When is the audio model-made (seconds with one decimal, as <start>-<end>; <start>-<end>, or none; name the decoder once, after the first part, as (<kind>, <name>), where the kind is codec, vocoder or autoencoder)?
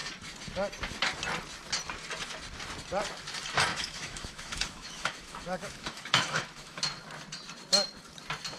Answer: 3.7-6.8 (autoencoder, DAC-VAE)